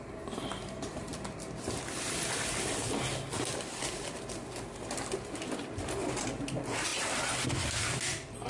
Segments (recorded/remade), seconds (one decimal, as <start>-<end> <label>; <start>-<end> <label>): 0.0-8.5 recorded